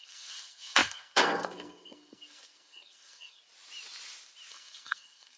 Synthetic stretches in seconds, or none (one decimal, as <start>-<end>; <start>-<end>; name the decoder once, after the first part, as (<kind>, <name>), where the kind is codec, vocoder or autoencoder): 0.0-3.4 (codec, SNAC); 4.5-5.4